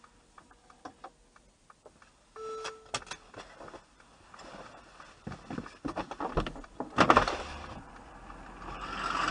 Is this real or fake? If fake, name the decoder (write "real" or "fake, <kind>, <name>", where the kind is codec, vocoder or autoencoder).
real